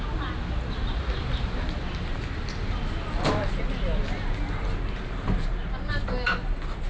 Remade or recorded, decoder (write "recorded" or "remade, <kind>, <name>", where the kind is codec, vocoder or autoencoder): recorded